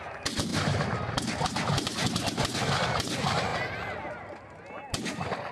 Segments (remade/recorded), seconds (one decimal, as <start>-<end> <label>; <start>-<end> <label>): 0.0-5.5 recorded